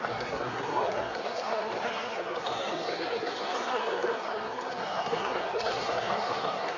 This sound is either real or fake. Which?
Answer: fake